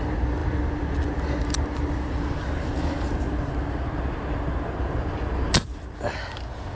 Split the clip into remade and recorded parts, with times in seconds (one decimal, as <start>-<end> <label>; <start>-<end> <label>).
0.0-6.8 recorded